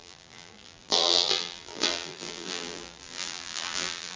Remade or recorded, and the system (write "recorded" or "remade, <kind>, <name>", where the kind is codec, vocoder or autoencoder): remade, vocoder, BigVGAN v2